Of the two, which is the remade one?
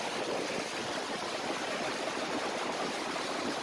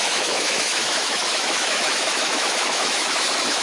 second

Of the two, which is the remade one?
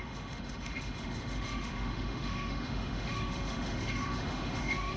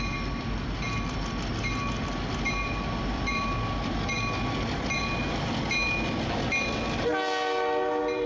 first